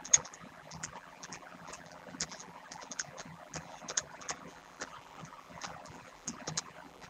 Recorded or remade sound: remade